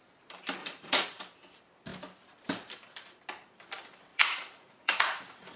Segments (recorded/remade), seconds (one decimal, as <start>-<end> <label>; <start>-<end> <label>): 0.0-0.6 recorded; 0.6-1.2 remade; 1.2-4.1 recorded; 4.1-5.6 remade